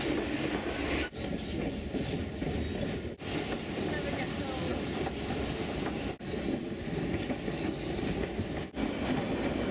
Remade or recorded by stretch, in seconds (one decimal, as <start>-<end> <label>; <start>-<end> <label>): 0.0-9.7 recorded